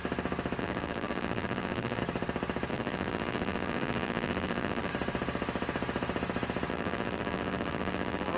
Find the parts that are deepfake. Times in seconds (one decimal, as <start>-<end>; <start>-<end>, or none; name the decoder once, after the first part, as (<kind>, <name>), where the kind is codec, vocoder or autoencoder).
0.6-2.0 (vocoder, BigVGAN v2); 2.7-4.9; 6.7-8.4